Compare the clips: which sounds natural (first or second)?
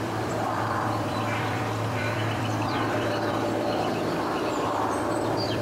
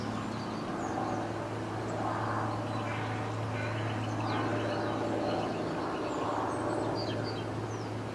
second